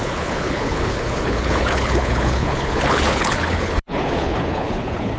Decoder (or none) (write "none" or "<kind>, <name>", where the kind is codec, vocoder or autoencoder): codec, HILCodec